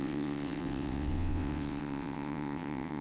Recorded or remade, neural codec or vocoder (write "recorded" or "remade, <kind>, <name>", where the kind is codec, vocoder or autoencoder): remade, vocoder, WaveNeXt